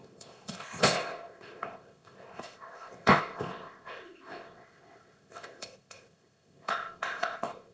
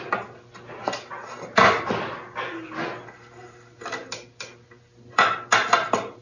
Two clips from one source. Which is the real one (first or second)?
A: second